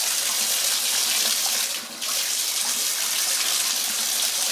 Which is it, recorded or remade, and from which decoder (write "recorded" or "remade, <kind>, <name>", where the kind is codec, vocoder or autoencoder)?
recorded